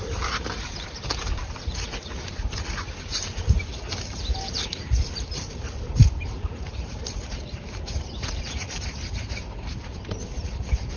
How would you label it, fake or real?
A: fake